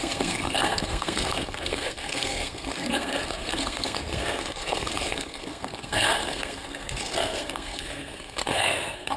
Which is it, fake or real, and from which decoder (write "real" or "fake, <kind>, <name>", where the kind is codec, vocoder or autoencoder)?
fake, codec, SNAC